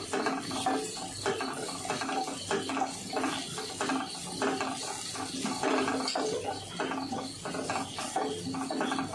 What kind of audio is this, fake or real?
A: real